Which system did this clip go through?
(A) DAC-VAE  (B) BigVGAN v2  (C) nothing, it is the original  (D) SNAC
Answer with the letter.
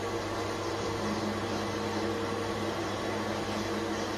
C